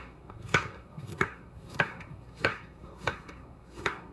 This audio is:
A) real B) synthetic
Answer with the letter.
B